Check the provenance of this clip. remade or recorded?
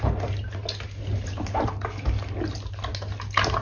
recorded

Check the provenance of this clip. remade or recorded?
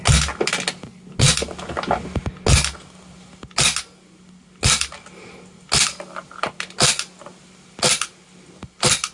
recorded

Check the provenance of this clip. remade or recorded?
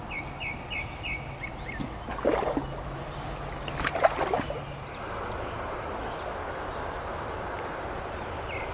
recorded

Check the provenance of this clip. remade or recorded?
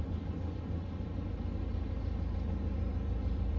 recorded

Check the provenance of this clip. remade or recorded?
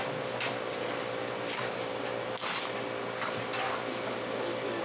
recorded